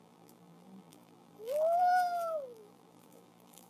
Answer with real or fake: fake